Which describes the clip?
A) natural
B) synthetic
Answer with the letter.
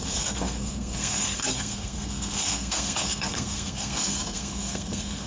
B